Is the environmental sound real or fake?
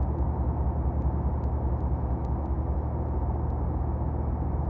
real